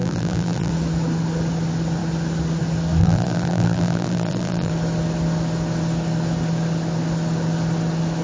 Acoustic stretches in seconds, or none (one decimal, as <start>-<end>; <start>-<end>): 0.7-3.0; 4.7-8.2